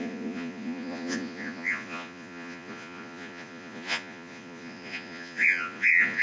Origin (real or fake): fake